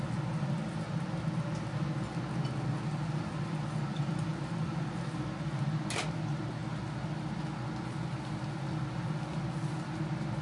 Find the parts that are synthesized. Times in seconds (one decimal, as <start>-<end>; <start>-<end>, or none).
none